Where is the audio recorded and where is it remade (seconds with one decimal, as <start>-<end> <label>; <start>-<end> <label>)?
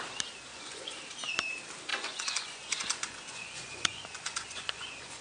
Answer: 0.0-0.5 recorded; 0.5-1.0 remade; 1.0-1.9 recorded; 1.9-5.2 remade